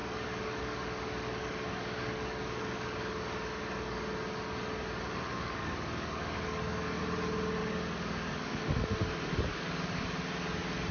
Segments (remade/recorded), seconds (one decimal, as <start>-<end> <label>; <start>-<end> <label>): 0.0-4.0 remade; 4.0-5.3 recorded; 5.3-7.0 remade; 7.0-7.6 recorded; 7.6-8.9 remade; 8.9-9.5 recorded; 9.5-10.0 remade; 10.0-10.9 recorded